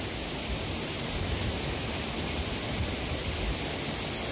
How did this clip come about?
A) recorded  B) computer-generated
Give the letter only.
A